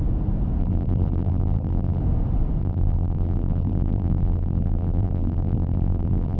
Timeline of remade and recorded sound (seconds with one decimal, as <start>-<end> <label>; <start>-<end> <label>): 0.0-0.6 recorded; 0.6-2.0 remade; 2.0-2.6 recorded; 2.6-6.4 remade